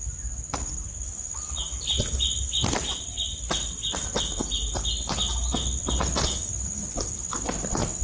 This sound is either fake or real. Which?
real